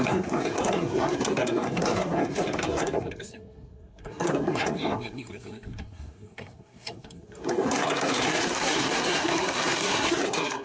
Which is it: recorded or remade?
remade